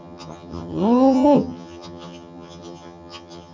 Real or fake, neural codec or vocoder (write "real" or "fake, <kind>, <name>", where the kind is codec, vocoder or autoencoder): fake, vocoder, HiFi-GAN